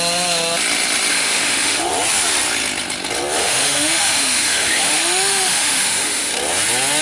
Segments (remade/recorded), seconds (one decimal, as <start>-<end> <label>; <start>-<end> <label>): 0.0-1.1 recorded; 1.1-1.9 remade; 1.9-3.4 recorded; 3.4-6.3 remade; 6.3-7.0 recorded